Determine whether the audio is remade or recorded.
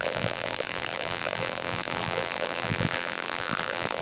remade